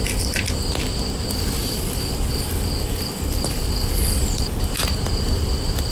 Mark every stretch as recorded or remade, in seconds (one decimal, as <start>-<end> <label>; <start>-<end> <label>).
0.0-1.6 recorded; 1.6-4.5 remade; 4.5-5.9 recorded